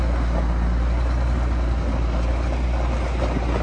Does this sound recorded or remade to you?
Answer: recorded